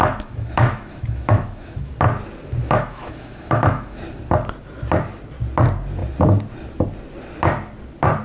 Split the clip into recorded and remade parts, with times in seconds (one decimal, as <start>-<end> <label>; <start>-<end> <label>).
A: 0.0-1.9 remade; 1.9-2.6 recorded; 2.6-4.0 remade; 4.0-8.2 recorded